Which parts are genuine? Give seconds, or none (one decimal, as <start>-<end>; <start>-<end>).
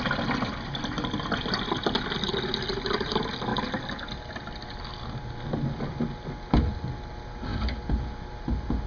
0.0-8.9